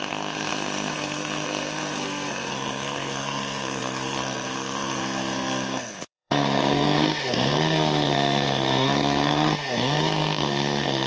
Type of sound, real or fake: fake